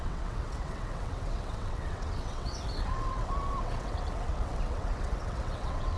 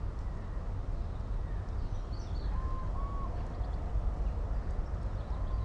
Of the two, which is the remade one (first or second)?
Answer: first